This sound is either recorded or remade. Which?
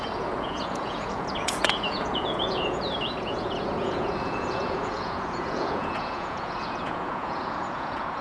remade